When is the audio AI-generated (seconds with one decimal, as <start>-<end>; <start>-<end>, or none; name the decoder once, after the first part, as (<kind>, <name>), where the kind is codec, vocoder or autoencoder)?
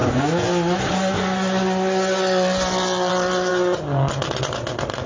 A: none